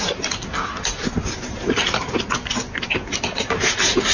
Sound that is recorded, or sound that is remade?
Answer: recorded